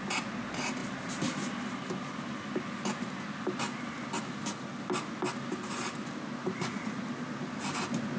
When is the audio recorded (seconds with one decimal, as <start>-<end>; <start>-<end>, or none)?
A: 0.0-6.4; 7.0-8.2